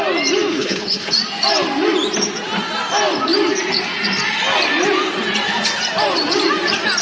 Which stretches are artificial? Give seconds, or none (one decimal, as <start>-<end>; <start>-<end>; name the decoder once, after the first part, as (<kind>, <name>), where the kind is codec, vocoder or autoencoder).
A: 0.5-1.1 (codec, HILCodec)